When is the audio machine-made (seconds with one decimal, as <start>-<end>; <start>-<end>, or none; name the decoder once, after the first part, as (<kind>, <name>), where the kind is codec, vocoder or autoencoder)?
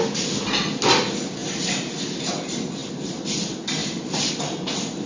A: 3.8-4.4 (vocoder, BigVGAN v2)